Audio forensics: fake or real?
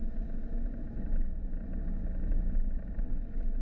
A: fake